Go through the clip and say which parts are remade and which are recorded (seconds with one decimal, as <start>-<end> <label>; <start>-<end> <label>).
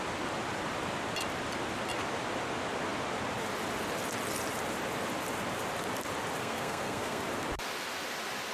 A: 0.0-6.4 recorded; 6.4-7.2 remade; 7.2-8.5 recorded